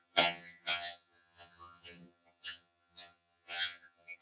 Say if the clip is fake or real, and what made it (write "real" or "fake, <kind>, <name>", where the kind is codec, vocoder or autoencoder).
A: fake, vocoder, HiFi-GAN